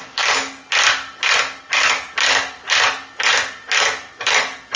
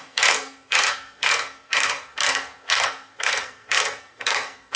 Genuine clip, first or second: first